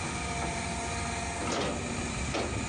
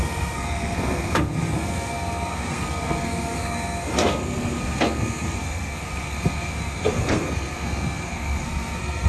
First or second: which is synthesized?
second